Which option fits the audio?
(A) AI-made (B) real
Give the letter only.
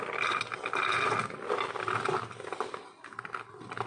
B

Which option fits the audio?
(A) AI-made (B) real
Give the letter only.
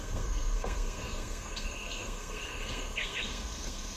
A